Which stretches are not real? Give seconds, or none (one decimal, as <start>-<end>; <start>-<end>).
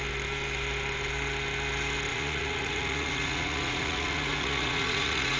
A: 2.1-5.4